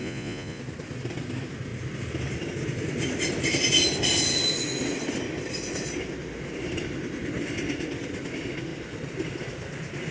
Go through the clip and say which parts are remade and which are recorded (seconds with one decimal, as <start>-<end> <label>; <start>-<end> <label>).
0.0-0.6 remade; 0.6-10.1 recorded